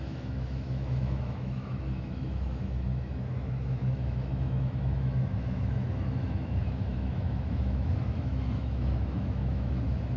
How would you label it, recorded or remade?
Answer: remade